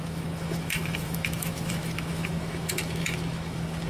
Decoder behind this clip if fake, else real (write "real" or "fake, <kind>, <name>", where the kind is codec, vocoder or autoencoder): fake, autoencoder, DAC-VAE